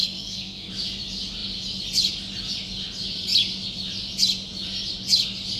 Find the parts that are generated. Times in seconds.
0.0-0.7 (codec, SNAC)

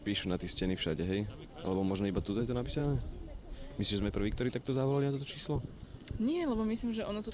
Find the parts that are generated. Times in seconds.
none

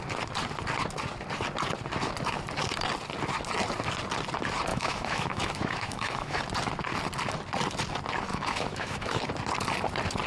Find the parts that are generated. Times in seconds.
4.7-6.4 (autoencoder, DAC-VAE); 8.3-9.2

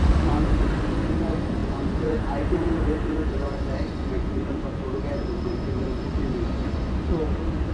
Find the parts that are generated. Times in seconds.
0.0-7.7 (vocoder, Vocos)